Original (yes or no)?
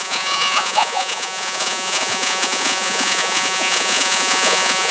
no